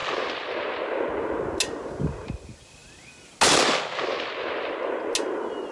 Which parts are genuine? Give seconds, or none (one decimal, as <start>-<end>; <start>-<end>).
0.0-5.7